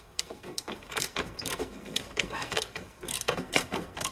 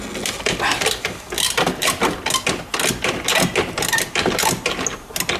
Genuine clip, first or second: second